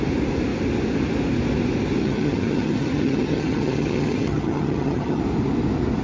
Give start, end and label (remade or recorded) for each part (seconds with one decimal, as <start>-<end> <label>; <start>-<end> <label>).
0.0-2.0 recorded; 2.0-5.2 remade; 5.2-6.0 recorded